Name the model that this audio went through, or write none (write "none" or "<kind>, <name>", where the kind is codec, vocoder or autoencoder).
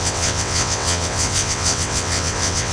vocoder, WaveNeXt